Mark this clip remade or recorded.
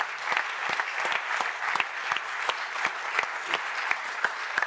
recorded